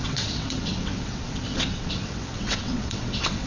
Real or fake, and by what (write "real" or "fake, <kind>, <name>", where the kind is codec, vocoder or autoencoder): fake, vocoder, WaveNeXt